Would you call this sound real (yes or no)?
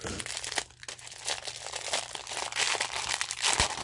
yes